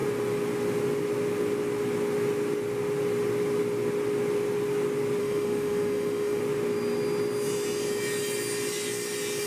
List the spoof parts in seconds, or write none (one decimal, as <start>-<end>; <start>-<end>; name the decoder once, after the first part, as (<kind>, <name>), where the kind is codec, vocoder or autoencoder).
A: 5.2-6.4 (autoencoder, DAC-VAE)